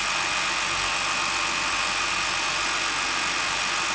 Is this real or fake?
real